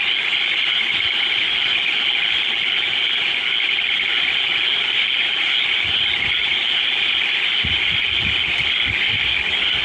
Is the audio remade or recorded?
recorded